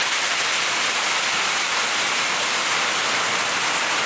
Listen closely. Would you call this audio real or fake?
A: real